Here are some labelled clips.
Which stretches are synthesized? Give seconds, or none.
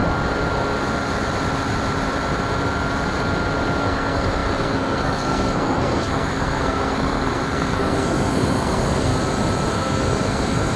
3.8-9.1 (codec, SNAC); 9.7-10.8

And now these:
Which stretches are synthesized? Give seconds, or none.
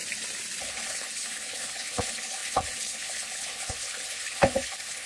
0.6-5.1 (codec, HILCodec)